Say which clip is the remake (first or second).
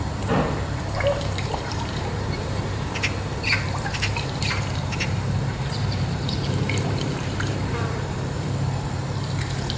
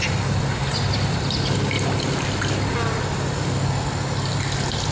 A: first